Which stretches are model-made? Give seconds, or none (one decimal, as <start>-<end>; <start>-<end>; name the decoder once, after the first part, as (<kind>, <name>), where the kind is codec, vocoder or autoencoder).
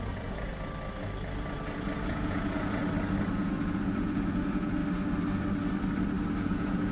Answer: 0.0-0.5 (vocoder, Vocos); 2.0-2.8; 3.3-4.8; 6.4-6.9